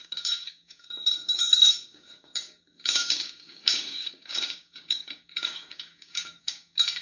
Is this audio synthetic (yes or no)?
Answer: yes